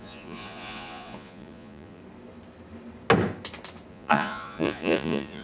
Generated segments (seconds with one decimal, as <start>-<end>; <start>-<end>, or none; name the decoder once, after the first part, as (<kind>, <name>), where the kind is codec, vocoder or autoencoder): 0.0-2.0 (vocoder, Vocos); 3.9-5.4